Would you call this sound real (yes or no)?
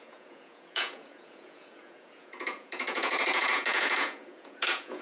no